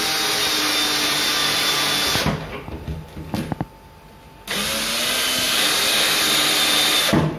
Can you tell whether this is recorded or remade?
recorded